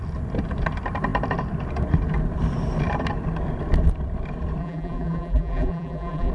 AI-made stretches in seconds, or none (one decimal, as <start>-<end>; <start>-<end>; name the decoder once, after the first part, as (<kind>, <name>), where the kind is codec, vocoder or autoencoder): 4.6-6.3 (vocoder, BigVGAN v2)